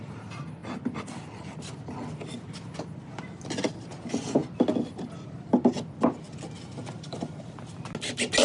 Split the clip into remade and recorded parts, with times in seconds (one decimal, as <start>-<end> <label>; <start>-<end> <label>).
0.0-8.4 recorded